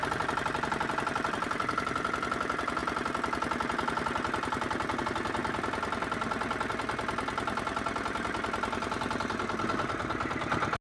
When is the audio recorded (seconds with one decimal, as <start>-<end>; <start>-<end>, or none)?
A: 0.0-10.8